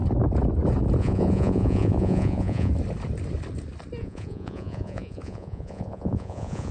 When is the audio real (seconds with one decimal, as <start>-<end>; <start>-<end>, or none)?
0.0-1.0; 2.7-4.0